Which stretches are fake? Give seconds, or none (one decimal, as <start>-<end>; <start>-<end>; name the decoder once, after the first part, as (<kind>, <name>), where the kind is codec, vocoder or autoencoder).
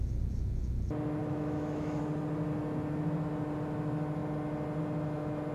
1.2-2.0 (autoencoder, DAC-VAE)